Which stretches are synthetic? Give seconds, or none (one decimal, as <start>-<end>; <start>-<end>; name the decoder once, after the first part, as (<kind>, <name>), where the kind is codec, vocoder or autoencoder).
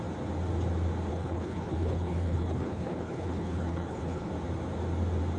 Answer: 1.1-4.3 (codec, HILCodec)